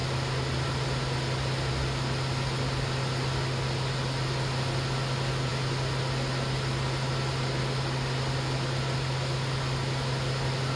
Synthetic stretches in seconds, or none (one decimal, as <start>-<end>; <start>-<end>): none